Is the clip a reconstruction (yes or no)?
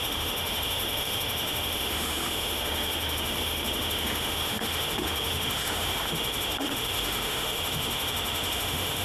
yes